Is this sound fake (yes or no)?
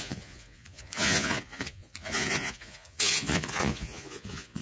yes